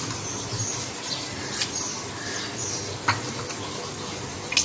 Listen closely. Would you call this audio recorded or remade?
recorded